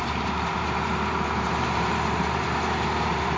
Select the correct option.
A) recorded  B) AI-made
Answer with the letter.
B